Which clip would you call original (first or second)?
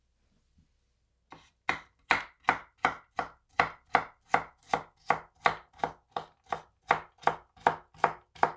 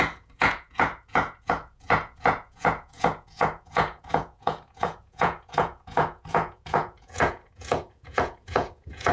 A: first